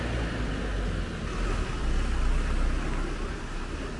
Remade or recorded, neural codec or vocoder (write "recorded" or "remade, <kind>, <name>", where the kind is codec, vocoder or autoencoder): recorded